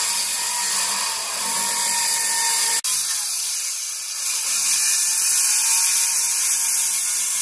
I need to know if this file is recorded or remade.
recorded